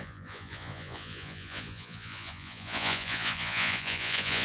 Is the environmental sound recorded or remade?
remade